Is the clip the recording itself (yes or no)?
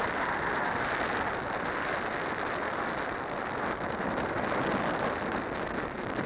yes